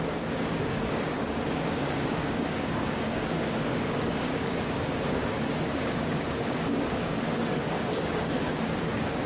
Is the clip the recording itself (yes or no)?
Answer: no